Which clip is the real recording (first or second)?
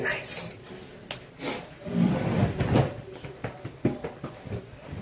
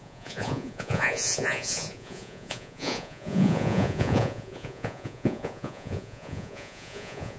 first